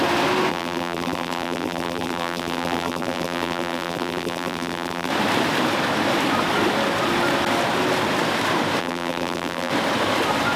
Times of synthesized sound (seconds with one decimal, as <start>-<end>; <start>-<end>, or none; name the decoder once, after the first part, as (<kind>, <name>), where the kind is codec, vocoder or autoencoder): 0.5-5.1 (vocoder, BigVGAN v2); 8.8-9.7